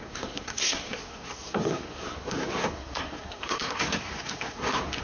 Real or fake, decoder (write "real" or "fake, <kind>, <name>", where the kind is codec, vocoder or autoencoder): fake, codec, SNAC